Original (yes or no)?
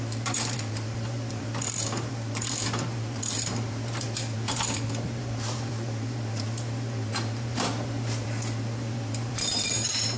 no